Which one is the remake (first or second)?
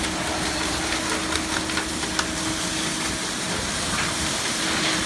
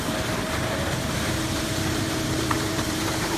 second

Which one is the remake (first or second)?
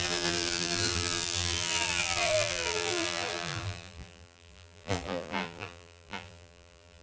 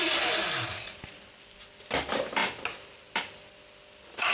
first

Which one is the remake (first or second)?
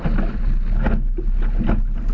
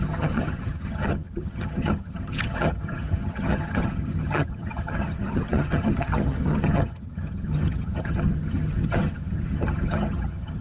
second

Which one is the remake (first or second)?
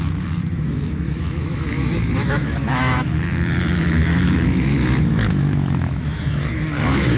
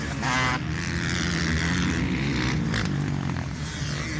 first